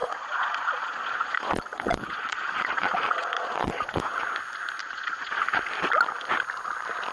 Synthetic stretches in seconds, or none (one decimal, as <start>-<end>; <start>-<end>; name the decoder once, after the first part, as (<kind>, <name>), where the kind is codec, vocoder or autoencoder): 0.0-4.0 (vocoder, Vocos); 4.8-5.4